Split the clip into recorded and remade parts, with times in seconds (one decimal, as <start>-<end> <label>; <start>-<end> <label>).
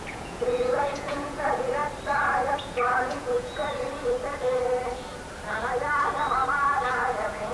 0.0-1.8 remade; 1.8-2.6 recorded; 2.6-3.6 remade; 3.6-6.9 recorded; 6.9-7.5 remade